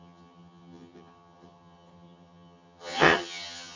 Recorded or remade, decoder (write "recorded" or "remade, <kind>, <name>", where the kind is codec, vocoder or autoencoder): remade, vocoder, HiFi-GAN